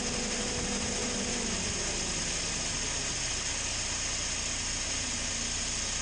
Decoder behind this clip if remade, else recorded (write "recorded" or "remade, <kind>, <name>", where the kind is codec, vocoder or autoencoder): recorded